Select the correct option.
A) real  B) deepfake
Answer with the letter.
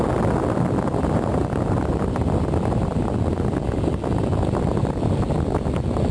A